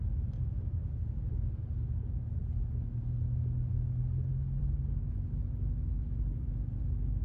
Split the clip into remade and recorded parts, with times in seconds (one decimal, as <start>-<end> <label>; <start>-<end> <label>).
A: 0.0-5.9 recorded; 5.9-6.5 remade; 6.5-7.2 recorded

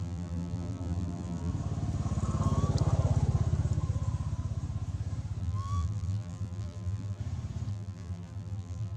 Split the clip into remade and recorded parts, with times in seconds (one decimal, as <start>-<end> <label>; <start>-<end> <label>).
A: 0.0-1.5 remade; 1.5-5.4 recorded; 5.4-7.2 remade; 7.2-7.7 recorded; 7.7-9.0 remade

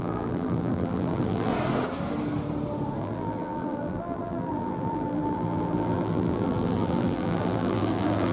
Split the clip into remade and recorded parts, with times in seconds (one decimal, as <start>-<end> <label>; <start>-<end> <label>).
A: 0.0-1.5 remade; 1.5-3.0 recorded; 3.0-8.3 remade

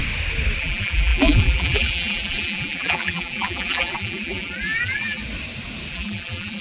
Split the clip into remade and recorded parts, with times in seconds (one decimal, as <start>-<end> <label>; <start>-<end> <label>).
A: 0.0-0.6 recorded; 0.6-5.2 remade; 5.2-5.9 recorded; 5.9-6.6 remade

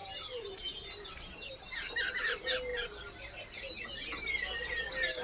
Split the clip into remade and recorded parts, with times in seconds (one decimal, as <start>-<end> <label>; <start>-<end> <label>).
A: 0.0-1.5 remade; 1.5-5.2 recorded

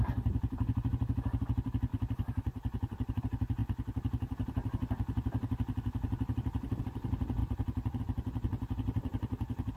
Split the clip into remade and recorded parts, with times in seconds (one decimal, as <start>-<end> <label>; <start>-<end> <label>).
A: 0.0-1.9 recorded; 1.9-3.2 remade; 3.2-7.4 recorded; 7.4-8.0 remade; 8.0-9.8 recorded

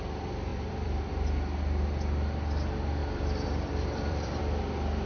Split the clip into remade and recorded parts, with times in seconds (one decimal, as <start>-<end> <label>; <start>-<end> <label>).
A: 0.0-0.5 recorded; 0.5-1.1 remade; 1.1-3.0 recorded; 3.0-4.4 remade; 4.4-5.1 recorded